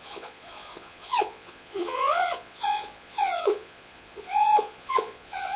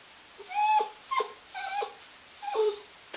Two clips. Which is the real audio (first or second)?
second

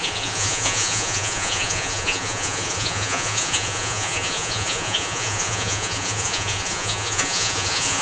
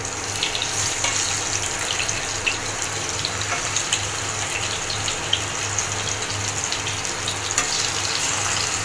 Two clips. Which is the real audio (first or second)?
second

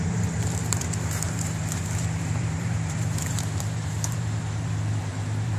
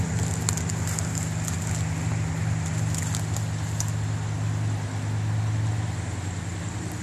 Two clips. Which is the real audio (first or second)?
second